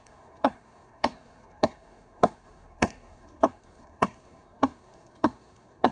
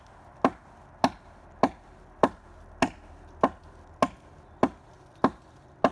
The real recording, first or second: second